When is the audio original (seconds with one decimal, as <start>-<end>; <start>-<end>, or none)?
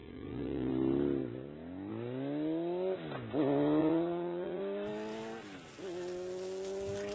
0.7-3.8; 4.6-7.1